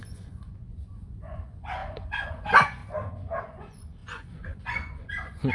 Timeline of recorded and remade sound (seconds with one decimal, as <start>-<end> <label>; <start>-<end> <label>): 0.0-2.8 remade; 2.8-3.4 recorded; 3.4-5.5 remade